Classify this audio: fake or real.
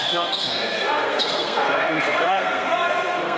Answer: fake